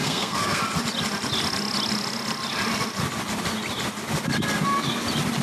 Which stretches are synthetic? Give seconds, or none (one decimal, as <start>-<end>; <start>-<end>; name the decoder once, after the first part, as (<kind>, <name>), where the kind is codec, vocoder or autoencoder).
0.0-0.6 (codec, SNAC)